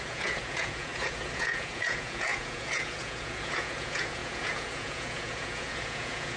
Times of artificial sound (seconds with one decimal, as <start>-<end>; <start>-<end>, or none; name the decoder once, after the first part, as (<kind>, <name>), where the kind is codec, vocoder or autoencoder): 0.0-6.4 (vocoder, Vocos)